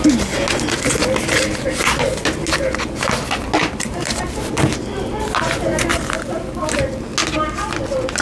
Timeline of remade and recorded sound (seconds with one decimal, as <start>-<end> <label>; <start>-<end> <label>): 0.0-3.6 recorded; 3.6-5.1 remade; 5.1-5.9 recorded; 5.9-6.7 remade; 6.7-8.2 recorded